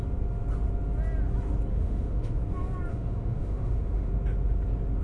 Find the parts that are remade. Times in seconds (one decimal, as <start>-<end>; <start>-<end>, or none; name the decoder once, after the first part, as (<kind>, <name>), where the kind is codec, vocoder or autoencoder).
1.7-2.4 (autoencoder, DAC-VAE); 2.9-4.1